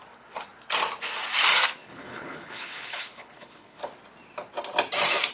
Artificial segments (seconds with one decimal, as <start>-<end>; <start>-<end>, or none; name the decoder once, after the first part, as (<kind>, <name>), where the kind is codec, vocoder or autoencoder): 1.8-3.8 (codec, HILCodec)